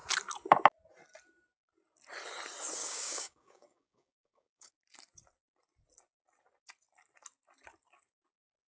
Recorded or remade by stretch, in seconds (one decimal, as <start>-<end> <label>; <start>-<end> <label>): 0.0-2.8 recorded; 2.8-4.7 remade; 4.7-8.7 recorded